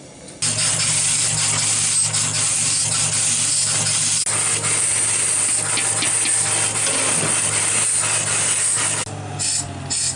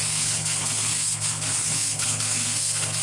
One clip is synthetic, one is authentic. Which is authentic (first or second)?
first